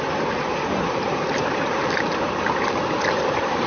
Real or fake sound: fake